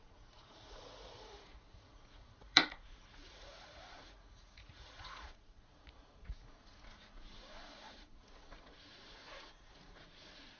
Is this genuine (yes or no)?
no